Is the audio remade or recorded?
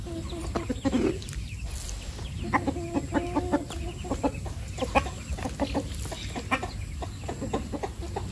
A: recorded